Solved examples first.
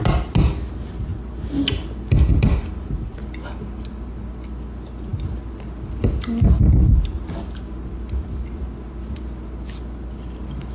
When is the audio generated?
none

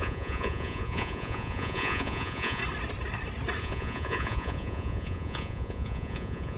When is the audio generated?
0.0-2.6 (vocoder, Vocos); 3.6-6.6

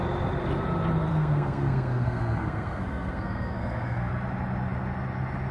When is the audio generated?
1.1-4.1 (codec, SNAC)

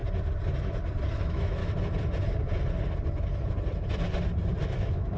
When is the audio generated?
1.1-1.6 (autoencoder, DAC-VAE); 4.6-5.2

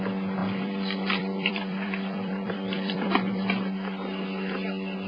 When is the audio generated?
0.4-3.5 (vocoder, BigVGAN v2)

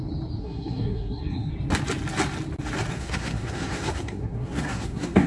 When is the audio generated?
0.4-1.5 (codec, SNAC); 2.9-5.3

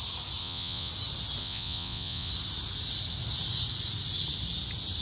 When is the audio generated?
0.4-0.9 (vocoder, Vocos); 1.4-2.3

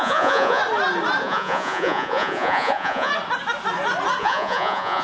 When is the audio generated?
0.0-0.6 (vocoder, Vocos); 1.2-3.1; 4.2-5.0